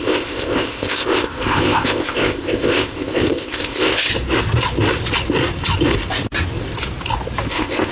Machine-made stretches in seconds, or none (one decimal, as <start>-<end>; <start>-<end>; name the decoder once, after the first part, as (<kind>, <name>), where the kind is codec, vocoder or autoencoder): 0.0-4.1 (codec, ZipCodec); 7.5-7.9